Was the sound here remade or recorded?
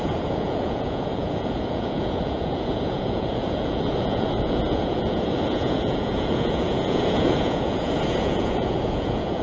remade